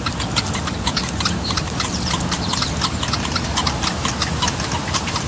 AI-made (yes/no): no